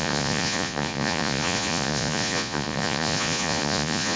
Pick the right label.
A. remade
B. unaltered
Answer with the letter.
A